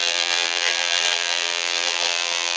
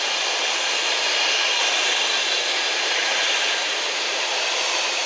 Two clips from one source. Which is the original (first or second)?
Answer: second